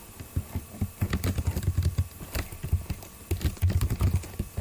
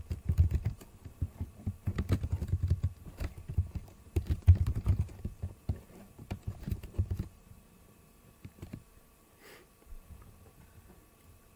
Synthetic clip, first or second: second